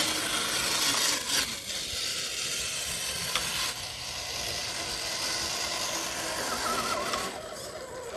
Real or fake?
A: real